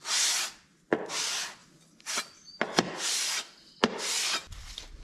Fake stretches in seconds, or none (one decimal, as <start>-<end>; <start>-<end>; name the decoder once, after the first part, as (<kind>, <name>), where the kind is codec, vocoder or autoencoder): 0.7-1.2 (vocoder, BigVGAN v2); 1.6-4.6